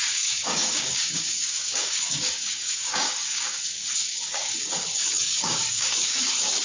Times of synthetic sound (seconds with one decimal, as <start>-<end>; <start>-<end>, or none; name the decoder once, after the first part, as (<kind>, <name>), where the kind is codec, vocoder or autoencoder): 0.0-6.6 (codec, DAC)